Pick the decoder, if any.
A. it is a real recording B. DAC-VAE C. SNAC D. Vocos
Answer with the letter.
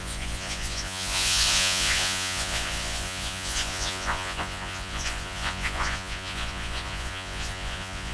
D